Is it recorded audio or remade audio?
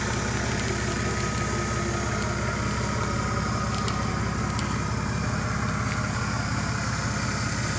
recorded